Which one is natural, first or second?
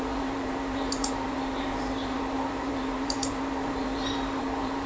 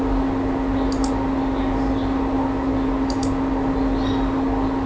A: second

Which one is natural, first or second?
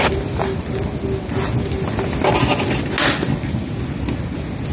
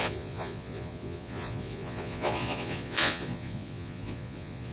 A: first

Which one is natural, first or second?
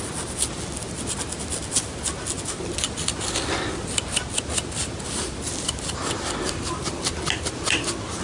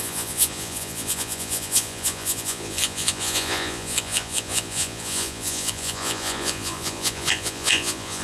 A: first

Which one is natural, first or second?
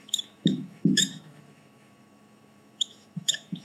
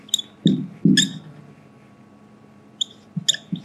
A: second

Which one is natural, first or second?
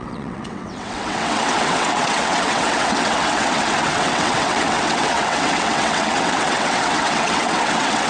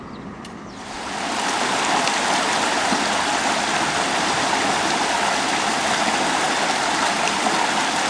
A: second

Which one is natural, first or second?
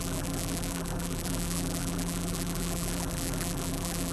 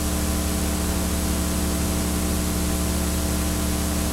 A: second